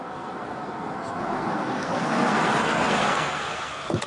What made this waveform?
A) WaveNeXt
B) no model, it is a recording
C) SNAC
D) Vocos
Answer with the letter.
C